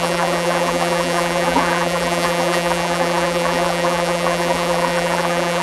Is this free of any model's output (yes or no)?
no